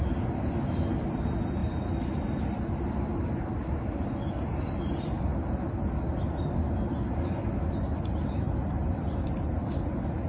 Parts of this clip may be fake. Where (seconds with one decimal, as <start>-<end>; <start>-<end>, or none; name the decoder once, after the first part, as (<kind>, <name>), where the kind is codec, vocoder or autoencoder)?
none